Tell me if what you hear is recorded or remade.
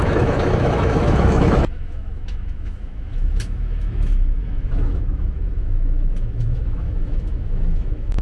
remade